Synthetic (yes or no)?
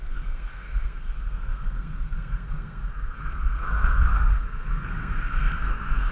yes